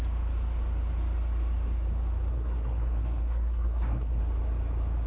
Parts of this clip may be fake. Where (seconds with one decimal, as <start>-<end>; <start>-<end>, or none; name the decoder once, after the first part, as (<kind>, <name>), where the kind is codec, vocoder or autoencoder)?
2.3-4.2 (codec, SNAC)